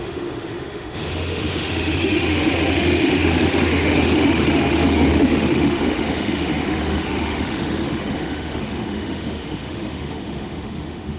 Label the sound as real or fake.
fake